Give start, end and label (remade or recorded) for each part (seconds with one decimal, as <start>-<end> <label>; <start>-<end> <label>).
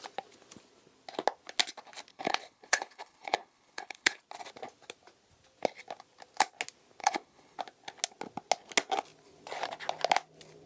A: 0.0-2.1 recorded; 2.1-4.2 remade; 4.2-7.0 recorded; 7.0-7.6 remade; 7.6-10.7 recorded